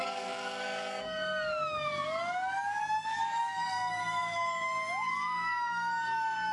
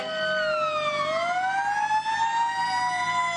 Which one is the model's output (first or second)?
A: first